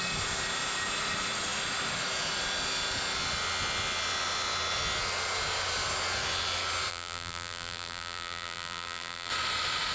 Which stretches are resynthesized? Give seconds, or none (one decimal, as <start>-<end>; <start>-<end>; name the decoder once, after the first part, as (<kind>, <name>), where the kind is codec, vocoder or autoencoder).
6.9-9.3 (vocoder, BigVGAN v2)